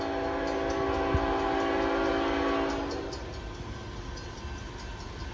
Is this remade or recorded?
recorded